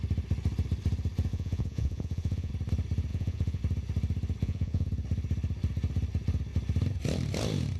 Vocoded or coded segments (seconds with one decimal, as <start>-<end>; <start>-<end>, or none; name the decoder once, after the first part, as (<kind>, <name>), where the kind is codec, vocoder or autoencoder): 1.3-2.5 (vocoder, Vocos); 3.1-3.6; 4.4-4.9